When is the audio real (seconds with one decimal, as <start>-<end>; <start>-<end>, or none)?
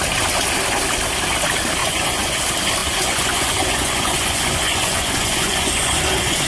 0.0-1.8; 2.4-2.8